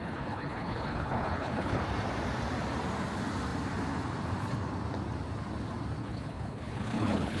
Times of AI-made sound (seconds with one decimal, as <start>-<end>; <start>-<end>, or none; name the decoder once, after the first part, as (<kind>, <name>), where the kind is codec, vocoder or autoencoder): 0.0-1.8 (codec, HILCodec); 6.0-7.4